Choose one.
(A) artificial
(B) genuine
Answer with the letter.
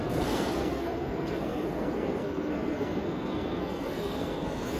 A